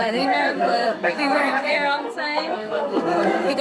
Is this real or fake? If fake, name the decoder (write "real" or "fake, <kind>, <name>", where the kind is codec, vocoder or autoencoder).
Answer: fake, codec, SNAC